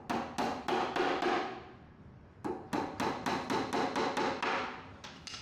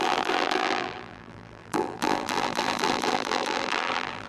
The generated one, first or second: second